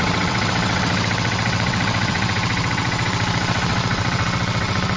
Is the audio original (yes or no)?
no